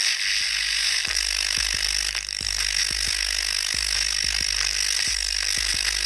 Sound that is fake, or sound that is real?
real